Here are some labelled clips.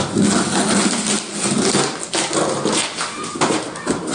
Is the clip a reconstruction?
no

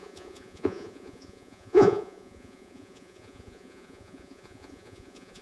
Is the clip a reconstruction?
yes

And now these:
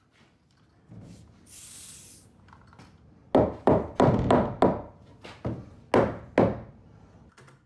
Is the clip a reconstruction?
no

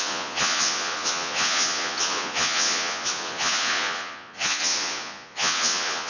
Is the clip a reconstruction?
yes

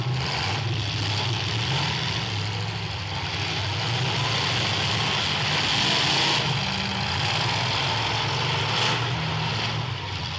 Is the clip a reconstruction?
no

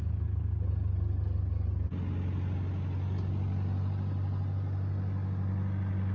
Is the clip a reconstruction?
no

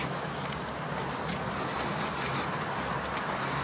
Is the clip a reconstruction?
no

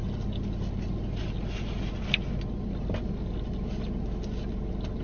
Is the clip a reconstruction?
no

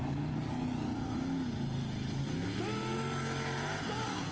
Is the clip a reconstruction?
no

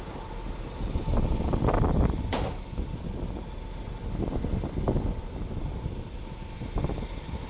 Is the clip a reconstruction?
no